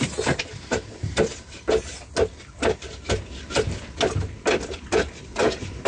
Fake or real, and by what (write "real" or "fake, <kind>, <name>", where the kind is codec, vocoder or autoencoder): real